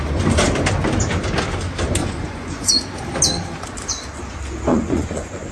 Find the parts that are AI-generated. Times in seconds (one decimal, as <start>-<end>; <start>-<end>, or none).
2.0-2.7; 4.7-5.5